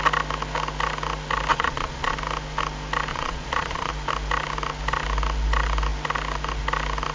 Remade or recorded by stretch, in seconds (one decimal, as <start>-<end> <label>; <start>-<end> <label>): 0.0-1.5 recorded; 1.5-2.1 remade; 2.1-3.1 recorded; 3.1-3.9 remade; 3.9-7.1 recorded